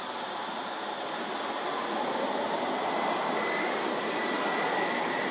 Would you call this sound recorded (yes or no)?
yes